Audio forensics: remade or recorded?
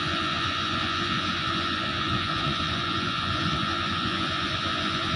remade